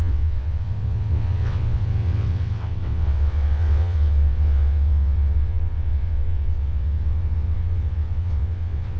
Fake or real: fake